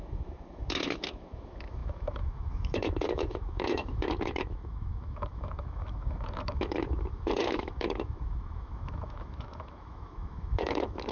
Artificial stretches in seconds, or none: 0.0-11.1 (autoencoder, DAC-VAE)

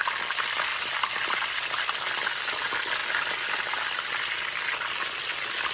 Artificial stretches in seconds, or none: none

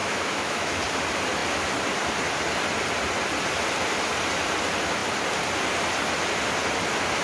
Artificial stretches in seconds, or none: 0.0-0.8 (autoencoder, DAC-VAE)

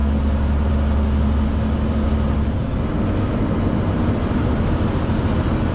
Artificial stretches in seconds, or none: none

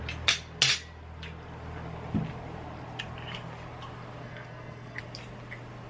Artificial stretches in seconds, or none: 4.2-5.0 (codec, SNAC)

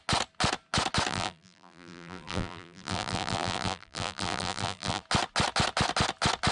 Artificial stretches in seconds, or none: 1.1-5.0 (vocoder, BigVGAN v2)